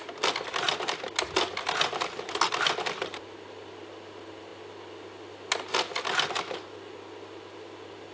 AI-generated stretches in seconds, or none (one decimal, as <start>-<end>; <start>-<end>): none